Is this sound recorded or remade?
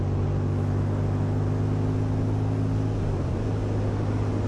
recorded